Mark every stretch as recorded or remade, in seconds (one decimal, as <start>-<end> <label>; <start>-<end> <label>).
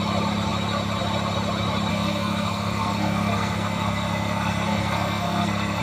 0.0-1.9 recorded; 1.9-5.8 remade